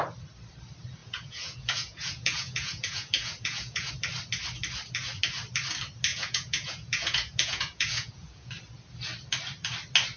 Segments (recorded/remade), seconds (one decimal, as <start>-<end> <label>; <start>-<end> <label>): 0.0-1.0 recorded; 1.0-3.9 remade; 3.9-6.1 recorded; 6.1-8.5 remade; 8.5-10.2 recorded